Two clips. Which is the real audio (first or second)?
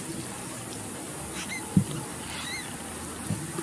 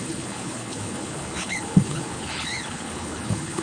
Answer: first